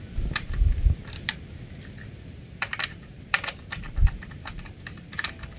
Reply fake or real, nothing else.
fake